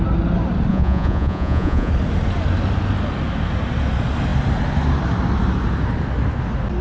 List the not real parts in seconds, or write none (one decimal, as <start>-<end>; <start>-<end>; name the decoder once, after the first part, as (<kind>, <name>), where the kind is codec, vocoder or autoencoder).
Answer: 0.7-1.9 (vocoder, Vocos)